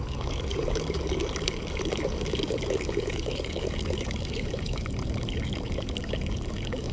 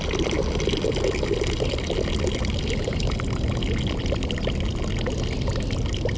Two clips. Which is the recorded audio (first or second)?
second